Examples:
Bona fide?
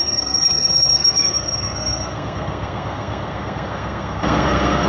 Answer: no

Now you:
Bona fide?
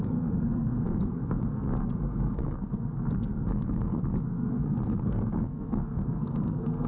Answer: no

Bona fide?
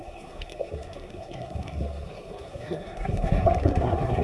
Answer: no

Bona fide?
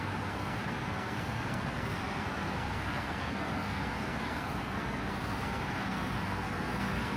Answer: no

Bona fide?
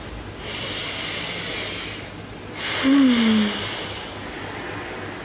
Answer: yes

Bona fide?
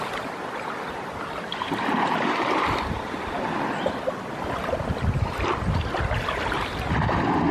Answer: yes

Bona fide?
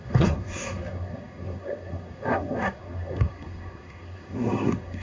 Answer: no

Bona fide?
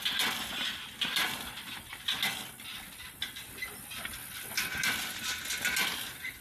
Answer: yes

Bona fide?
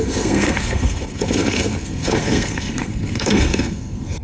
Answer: no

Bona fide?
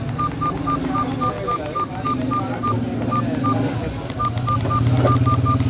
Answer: yes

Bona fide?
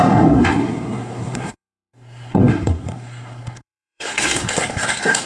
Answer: no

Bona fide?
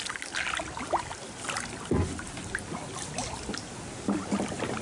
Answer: yes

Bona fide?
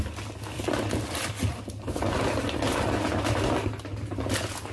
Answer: yes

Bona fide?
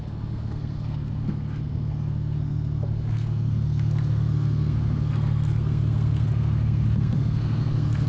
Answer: no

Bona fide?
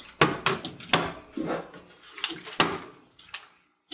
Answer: yes